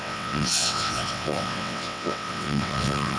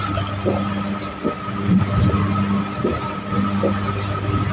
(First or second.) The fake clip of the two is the first